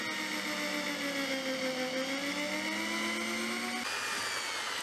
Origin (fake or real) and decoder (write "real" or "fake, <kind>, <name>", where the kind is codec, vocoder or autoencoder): real